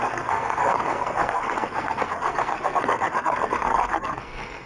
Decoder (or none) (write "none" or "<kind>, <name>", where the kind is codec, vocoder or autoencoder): codec, SNAC